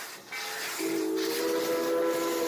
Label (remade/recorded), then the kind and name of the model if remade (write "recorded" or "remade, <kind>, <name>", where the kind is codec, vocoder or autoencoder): recorded